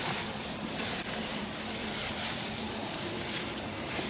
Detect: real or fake fake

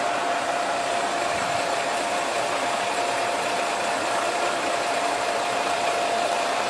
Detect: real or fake fake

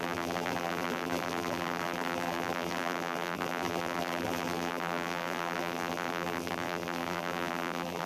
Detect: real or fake fake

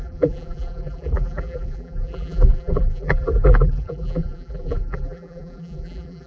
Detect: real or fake fake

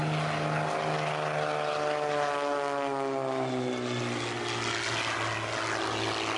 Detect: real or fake real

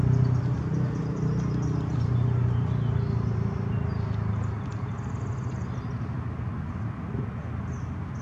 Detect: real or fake real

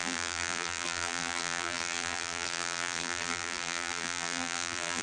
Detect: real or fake fake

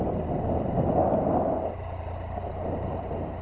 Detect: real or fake real